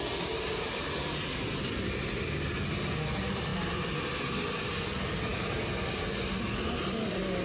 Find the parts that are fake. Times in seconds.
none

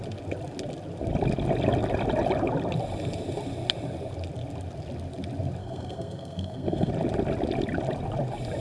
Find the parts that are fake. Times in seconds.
5.6-6.9